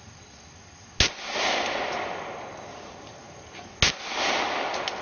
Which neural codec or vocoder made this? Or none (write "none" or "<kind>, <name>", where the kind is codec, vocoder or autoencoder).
none